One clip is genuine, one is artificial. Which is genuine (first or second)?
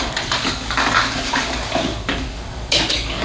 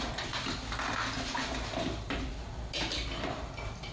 second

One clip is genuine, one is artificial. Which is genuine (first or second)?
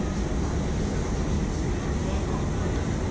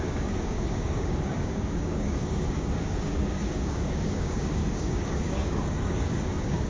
first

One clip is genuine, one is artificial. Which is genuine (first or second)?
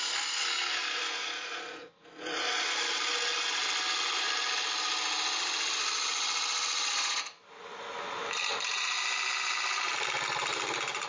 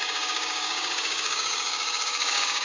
first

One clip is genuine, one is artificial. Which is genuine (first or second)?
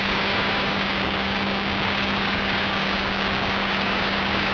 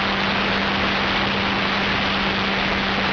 second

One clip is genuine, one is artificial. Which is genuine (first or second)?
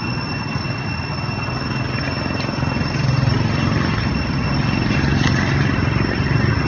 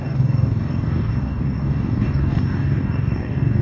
first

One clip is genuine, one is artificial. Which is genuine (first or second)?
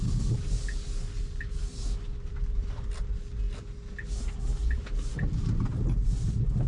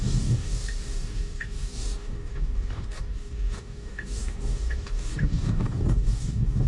first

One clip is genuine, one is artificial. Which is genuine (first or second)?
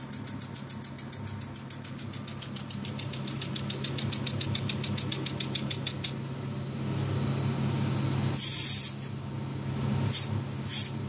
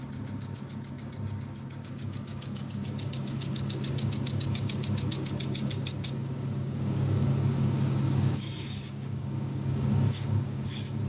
first